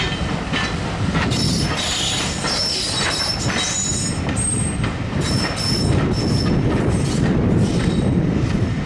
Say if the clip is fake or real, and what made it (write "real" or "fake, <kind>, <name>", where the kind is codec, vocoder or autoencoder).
real